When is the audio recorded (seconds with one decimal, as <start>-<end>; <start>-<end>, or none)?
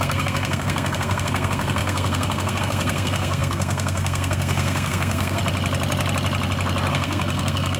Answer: 5.4-6.9